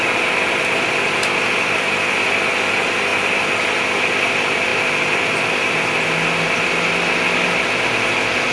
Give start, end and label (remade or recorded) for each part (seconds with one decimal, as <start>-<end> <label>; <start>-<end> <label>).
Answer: 0.0-8.5 recorded